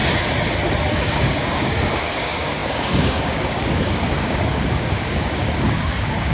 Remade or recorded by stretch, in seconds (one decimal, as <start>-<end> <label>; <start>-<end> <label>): 0.0-1.0 recorded; 1.0-6.3 remade